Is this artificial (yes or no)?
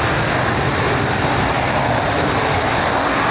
no